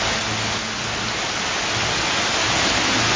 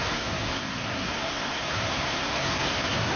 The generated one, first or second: second